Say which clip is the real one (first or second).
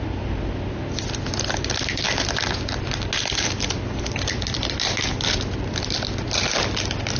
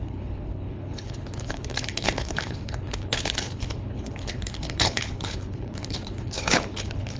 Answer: first